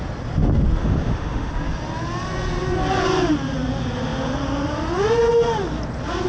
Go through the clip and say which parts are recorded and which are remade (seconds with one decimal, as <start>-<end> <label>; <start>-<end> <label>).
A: 0.0-0.8 recorded; 0.8-1.5 remade; 1.5-6.3 recorded